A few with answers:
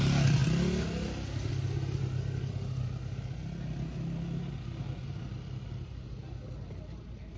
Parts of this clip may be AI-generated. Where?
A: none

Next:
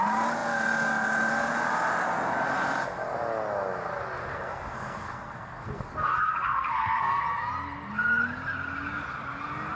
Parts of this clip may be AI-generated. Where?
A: 4.2-7.2 (codec, SNAC)

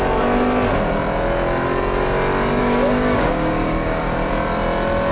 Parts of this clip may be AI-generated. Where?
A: 2.6-4.3 (codec, DAC)

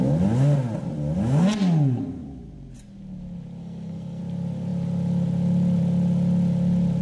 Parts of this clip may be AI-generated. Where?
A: 3.6-4.2 (codec, SNAC)

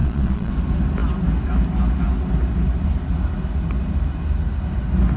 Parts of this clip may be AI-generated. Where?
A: 0.0-0.5 (vocoder, Vocos)